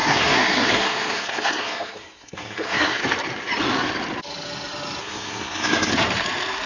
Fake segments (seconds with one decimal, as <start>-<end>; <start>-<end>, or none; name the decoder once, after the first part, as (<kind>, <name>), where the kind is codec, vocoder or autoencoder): 0.0-3.0 (codec, SNAC); 5.0-5.9